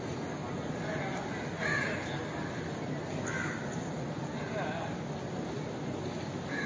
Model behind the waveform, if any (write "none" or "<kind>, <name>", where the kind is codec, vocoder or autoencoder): none